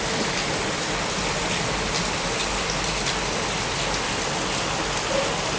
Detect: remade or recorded recorded